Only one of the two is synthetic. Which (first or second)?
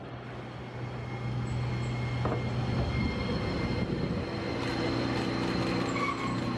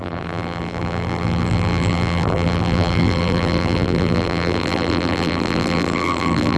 second